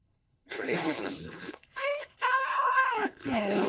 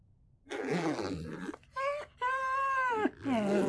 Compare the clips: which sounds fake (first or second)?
first